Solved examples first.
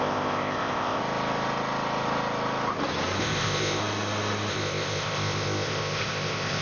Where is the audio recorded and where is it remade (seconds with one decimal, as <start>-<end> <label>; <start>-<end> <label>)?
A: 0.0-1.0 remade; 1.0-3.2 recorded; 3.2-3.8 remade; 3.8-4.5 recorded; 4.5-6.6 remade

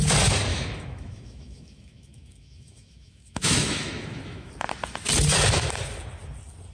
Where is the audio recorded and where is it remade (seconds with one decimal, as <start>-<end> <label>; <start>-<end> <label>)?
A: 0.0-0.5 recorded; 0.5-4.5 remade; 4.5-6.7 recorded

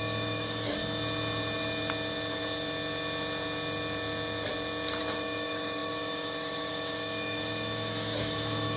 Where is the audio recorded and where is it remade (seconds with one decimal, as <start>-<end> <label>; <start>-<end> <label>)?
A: 0.0-0.8 remade; 0.8-5.0 recorded; 5.0-8.8 remade